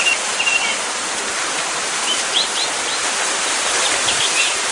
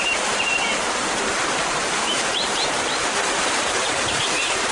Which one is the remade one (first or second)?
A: second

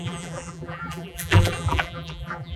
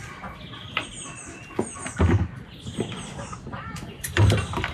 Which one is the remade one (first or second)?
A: first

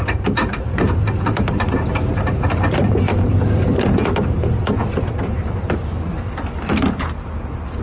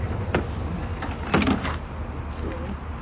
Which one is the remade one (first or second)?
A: first